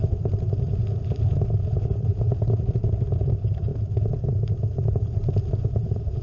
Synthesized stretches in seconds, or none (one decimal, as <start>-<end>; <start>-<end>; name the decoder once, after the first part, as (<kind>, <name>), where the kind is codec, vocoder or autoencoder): 0.0-0.8 (vocoder, BigVGAN v2); 1.6-3.7; 4.9-6.2